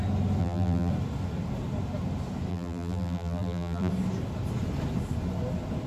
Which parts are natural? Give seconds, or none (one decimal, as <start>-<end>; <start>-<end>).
0.0-0.4; 0.9-2.5; 3.9-5.9